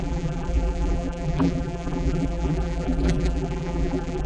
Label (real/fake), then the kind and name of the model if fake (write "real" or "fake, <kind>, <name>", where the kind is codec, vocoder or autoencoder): fake, vocoder, BigVGAN v2